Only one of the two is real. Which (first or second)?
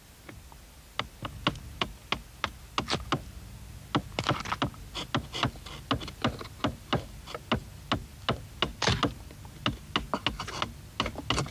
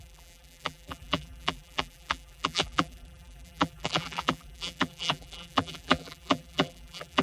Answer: first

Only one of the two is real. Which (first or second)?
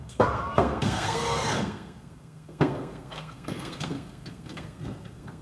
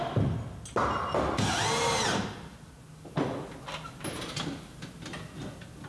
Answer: second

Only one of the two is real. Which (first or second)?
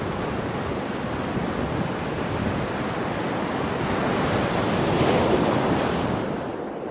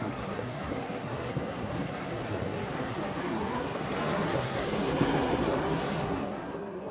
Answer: first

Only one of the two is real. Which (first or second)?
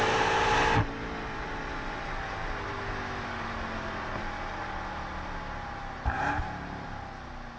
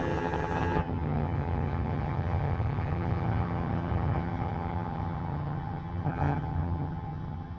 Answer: first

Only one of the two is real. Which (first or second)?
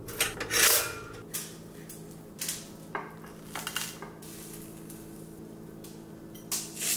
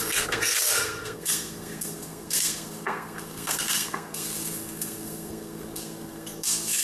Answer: first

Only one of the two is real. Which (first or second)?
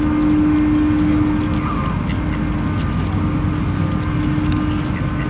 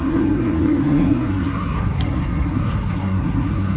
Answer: first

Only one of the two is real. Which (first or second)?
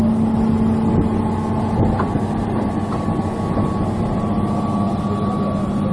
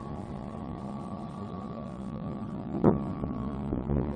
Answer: first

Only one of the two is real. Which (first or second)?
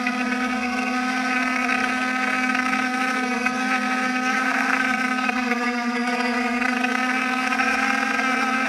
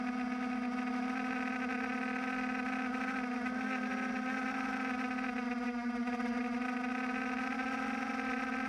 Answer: second